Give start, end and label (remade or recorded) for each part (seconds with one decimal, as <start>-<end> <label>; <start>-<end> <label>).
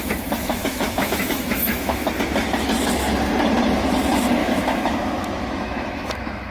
0.0-0.6 recorded; 0.6-2.1 remade; 2.1-4.4 recorded; 4.4-6.5 remade